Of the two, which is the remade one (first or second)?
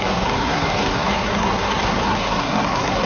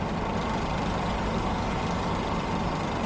first